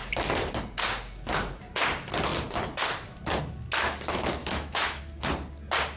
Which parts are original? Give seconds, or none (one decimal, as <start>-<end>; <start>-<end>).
0.0-4.4; 5.0-6.0